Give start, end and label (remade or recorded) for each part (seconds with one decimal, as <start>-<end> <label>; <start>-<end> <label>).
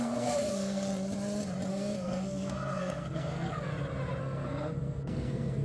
0.0-0.9 remade; 0.9-1.7 recorded; 1.7-3.7 remade; 3.7-4.2 recorded; 4.2-5.6 remade